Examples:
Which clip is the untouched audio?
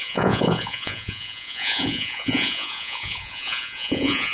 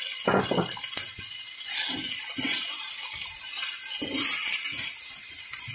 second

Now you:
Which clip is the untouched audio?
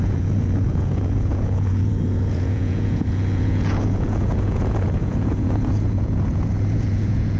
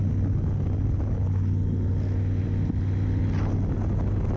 second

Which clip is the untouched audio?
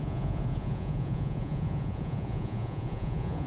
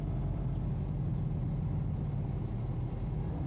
second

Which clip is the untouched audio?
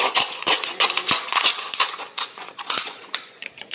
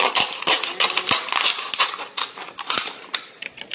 second